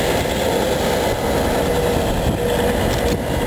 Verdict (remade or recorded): recorded